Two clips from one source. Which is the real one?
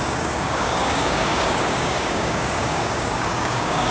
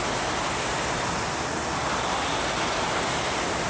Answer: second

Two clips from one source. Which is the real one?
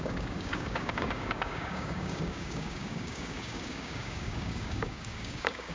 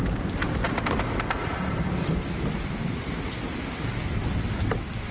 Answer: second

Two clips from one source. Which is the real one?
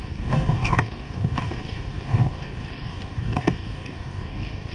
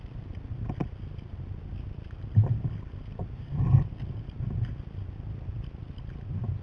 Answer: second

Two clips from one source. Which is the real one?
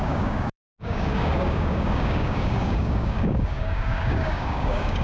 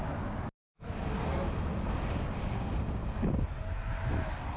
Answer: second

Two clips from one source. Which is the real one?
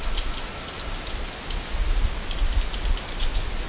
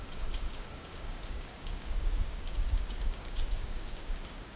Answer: first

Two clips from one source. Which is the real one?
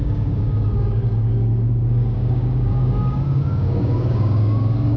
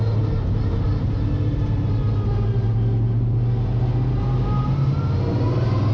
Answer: second